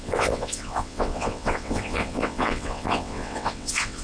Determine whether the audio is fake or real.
fake